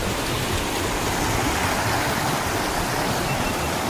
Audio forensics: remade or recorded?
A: recorded